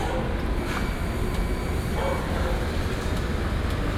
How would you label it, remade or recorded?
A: recorded